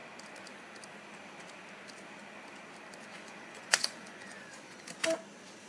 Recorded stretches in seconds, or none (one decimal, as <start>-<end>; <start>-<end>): 0.0-3.1; 4.8-5.7